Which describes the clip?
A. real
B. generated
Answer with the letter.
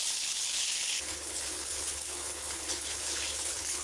B